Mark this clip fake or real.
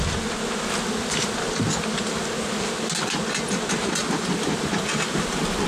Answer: real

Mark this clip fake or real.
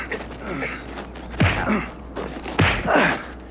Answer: real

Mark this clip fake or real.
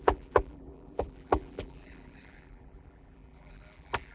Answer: fake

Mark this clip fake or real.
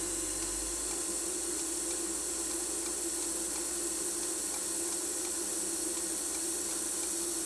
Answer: real